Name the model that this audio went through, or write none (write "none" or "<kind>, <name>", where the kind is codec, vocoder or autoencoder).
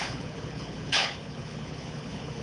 codec, HILCodec